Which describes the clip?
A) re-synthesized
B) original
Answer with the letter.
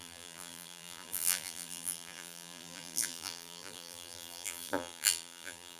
A